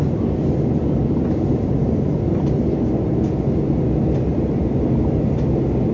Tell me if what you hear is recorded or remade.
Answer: recorded